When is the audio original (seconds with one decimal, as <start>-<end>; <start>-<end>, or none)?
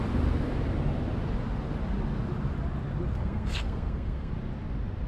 0.0-3.1; 4.3-5.1